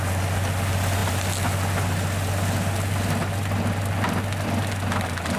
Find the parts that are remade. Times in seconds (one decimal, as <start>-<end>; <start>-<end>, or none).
none